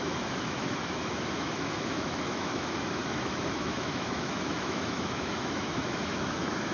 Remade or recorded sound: remade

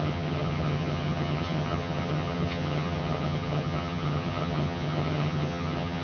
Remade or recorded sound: remade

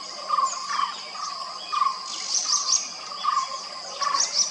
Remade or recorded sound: recorded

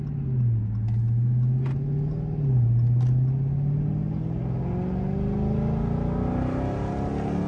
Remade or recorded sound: recorded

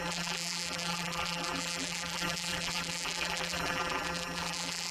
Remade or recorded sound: remade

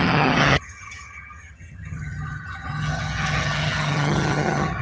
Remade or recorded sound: remade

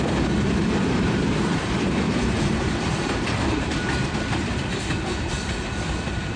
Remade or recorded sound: remade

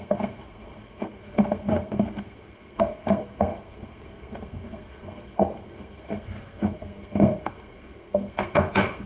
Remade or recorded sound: remade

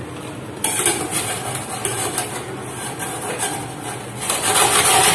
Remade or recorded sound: recorded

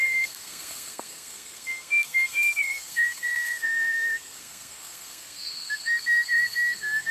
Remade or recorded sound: remade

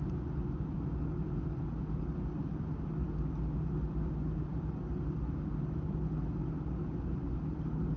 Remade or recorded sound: recorded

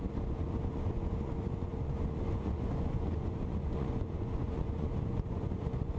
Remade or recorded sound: remade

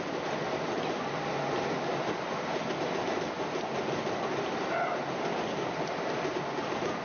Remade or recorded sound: recorded